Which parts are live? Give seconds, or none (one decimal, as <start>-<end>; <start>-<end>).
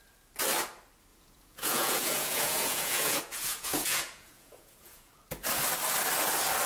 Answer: 0.0-1.1; 5.1-6.7